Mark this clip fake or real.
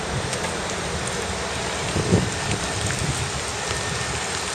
real